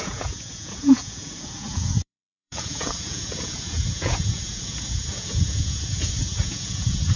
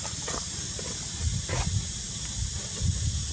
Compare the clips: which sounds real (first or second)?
second